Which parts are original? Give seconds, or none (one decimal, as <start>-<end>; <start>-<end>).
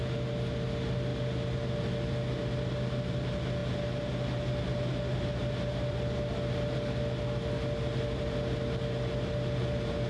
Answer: 0.0-10.1